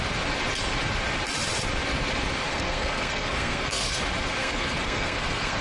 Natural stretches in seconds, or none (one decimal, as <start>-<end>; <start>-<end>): 0.0-2.5; 4.0-4.4